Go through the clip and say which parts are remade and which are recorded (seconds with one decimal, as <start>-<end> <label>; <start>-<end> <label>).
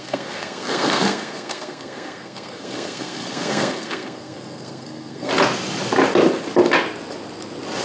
0.0-5.3 remade; 5.3-7.8 recorded